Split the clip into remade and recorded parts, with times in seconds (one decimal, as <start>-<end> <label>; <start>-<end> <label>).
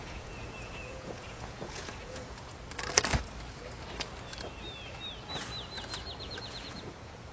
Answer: 0.0-2.5 remade; 2.5-6.2 recorded; 6.2-7.3 remade